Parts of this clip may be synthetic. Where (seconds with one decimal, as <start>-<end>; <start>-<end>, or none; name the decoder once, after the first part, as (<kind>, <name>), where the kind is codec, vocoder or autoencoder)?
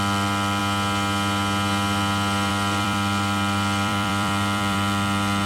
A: 0.0-0.6 (vocoder, BigVGAN v2); 2.5-5.5